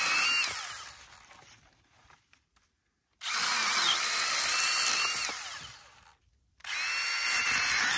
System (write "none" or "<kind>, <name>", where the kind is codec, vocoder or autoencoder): none